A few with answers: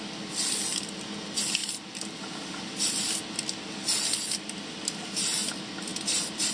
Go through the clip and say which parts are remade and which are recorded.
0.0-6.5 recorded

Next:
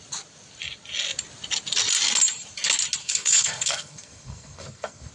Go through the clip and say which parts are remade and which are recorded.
0.0-3.0 recorded; 3.0-5.1 remade

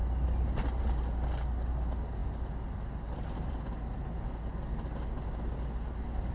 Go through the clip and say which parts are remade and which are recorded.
0.0-6.3 recorded